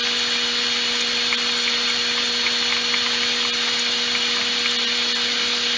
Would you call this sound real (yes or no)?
yes